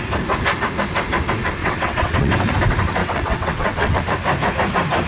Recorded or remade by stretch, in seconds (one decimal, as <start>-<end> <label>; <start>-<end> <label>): 0.0-1.6 recorded; 1.6-2.5 remade; 2.5-3.0 recorded; 3.0-4.0 remade; 4.0-5.1 recorded